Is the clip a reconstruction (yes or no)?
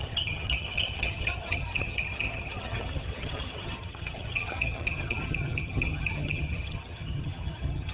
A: yes